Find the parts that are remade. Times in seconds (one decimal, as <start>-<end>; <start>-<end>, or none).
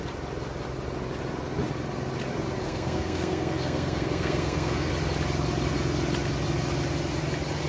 2.6-4.9